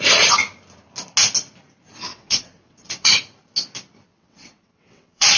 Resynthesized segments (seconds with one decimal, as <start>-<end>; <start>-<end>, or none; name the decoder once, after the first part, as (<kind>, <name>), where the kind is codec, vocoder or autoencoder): 2.1-3.1 (vocoder, WaveNeXt); 4.1-5.4